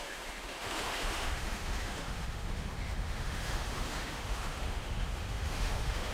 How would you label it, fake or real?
fake